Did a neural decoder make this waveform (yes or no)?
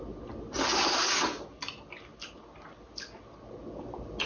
no